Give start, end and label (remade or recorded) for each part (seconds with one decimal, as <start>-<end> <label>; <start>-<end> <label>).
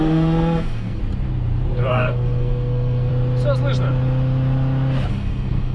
0.0-1.0 remade; 1.0-1.9 recorded; 1.9-3.1 remade; 3.1-5.1 recorded; 5.1-5.7 remade